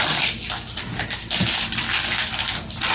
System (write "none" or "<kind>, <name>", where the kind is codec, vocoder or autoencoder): none